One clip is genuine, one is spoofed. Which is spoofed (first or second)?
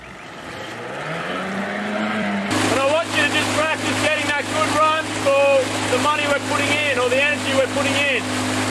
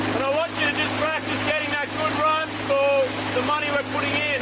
first